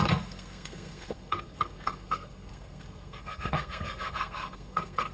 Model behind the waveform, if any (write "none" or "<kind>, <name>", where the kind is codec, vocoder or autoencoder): codec, SNAC